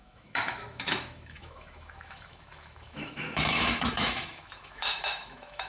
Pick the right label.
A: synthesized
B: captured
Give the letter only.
A